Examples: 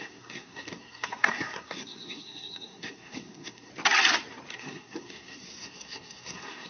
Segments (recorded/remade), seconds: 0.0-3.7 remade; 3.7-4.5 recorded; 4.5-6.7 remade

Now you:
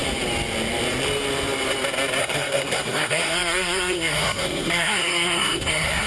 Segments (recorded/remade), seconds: 0.0-2.2 recorded; 2.2-6.1 remade

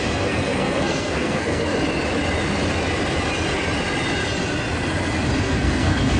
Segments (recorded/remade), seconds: 0.0-1.7 remade; 1.7-5.4 recorded; 5.4-6.2 remade